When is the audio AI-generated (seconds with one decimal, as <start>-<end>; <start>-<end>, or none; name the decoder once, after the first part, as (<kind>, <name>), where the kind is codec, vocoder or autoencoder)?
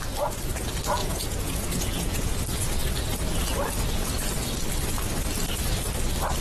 1.0-2.3 (vocoder, Vocos)